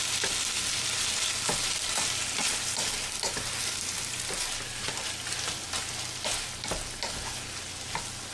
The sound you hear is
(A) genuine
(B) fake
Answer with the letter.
A